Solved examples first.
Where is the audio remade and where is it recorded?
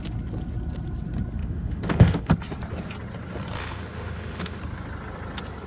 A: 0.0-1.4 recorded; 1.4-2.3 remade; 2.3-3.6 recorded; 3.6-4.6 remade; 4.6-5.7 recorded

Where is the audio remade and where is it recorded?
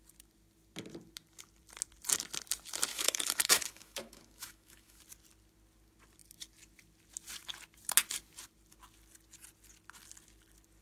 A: 0.0-2.9 recorded; 2.9-5.0 remade; 5.0-10.8 recorded